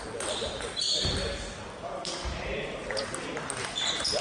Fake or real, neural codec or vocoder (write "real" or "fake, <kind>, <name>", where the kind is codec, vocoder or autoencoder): fake, vocoder, BigVGAN v2